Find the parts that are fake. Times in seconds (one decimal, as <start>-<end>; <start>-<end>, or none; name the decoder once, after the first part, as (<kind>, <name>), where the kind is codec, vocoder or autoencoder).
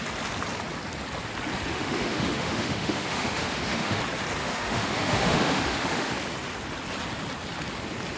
1.7-4.0 (autoencoder, DAC-VAE); 4.4-6.1